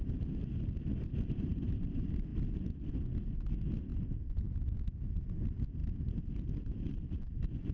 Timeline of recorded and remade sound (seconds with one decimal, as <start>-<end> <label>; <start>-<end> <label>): 0.0-3.9 remade; 3.9-5.2 recorded; 5.2-5.8 remade; 5.8-6.5 recorded; 6.5-7.7 remade